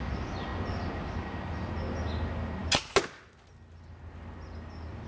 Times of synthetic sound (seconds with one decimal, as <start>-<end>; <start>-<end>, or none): none